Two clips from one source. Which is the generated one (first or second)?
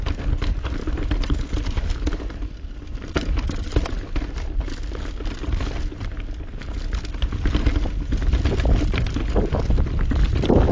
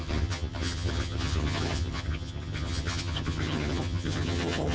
second